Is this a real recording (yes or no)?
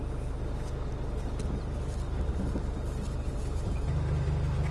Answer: yes